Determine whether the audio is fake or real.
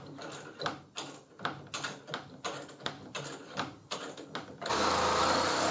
real